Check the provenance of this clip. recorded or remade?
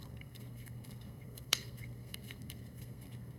remade